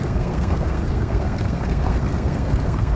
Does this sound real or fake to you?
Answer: fake